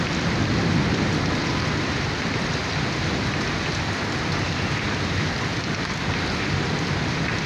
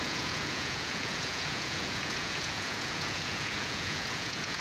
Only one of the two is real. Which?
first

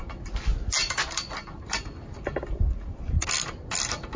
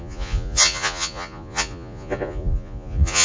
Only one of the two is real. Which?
first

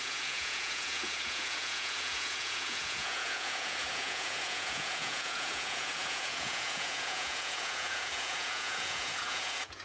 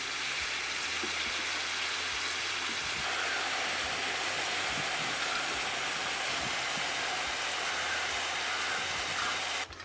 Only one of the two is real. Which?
second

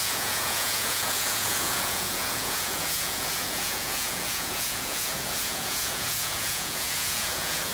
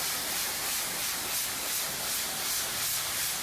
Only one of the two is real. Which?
second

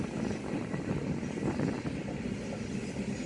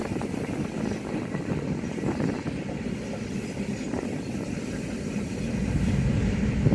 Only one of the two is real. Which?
first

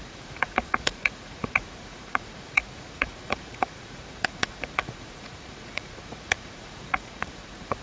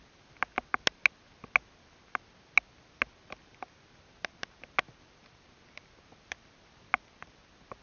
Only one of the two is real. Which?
second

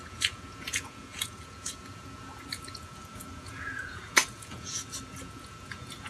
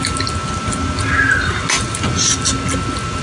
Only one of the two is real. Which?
second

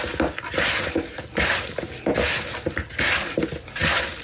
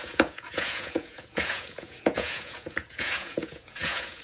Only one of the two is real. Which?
first